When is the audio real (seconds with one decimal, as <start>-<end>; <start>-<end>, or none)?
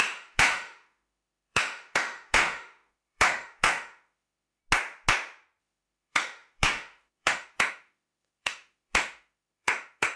4.6-5.6